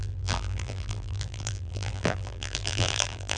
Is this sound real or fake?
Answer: fake